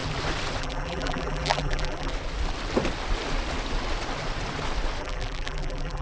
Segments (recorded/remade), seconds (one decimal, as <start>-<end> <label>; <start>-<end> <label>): 0.0-0.6 recorded; 0.6-2.1 remade; 2.1-5.0 recorded; 5.0-6.0 remade

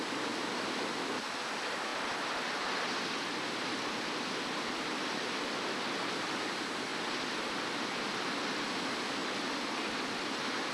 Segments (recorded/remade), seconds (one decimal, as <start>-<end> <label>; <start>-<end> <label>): 0.0-1.9 recorded; 1.9-6.1 remade; 6.1-6.9 recorded; 6.9-8.7 remade; 8.7-9.2 recorded; 9.2-10.7 remade

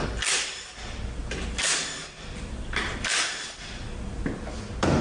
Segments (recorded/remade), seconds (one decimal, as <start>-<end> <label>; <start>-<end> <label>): 0.0-1.2 recorded; 1.2-4.2 remade; 4.2-5.0 recorded

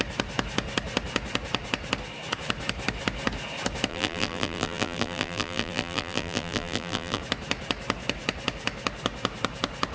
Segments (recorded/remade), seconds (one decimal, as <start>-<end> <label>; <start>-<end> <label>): 0.0-3.9 recorded; 3.9-7.2 remade; 7.2-9.9 recorded

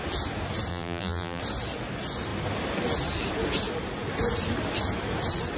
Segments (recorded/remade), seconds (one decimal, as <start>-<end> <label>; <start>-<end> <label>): 0.0-0.7 recorded; 0.7-1.4 remade; 1.4-5.6 recorded

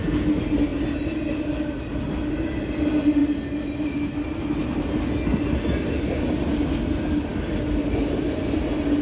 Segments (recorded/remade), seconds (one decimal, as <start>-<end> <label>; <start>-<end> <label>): 0.0-9.0 recorded

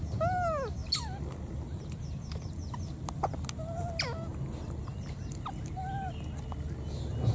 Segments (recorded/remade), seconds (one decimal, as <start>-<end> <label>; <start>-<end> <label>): 0.0-4.3 recorded; 4.3-5.6 remade; 5.6-7.3 recorded